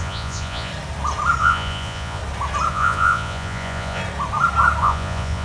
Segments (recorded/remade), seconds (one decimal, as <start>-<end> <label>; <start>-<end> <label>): 0.0-0.7 remade; 0.7-1.4 recorded; 1.4-2.2 remade; 2.2-2.7 recorded; 2.7-4.0 remade; 4.0-4.8 recorded; 4.8-5.4 remade